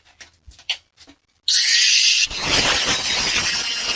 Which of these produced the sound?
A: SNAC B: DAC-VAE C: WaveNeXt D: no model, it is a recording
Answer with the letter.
D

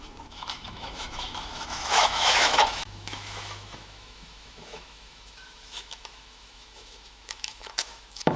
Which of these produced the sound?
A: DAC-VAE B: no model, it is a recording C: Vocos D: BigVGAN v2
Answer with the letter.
A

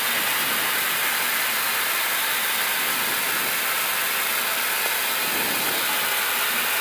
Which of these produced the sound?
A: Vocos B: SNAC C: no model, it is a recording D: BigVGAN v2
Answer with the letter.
C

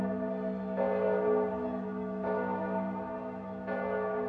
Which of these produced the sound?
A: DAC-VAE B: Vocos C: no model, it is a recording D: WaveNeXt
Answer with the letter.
C